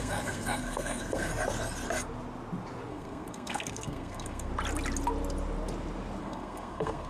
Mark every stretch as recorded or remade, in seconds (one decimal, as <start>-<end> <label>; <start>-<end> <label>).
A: 0.0-1.3 remade; 1.3-2.9 recorded; 2.9-4.5 remade; 4.5-6.2 recorded; 6.2-7.1 remade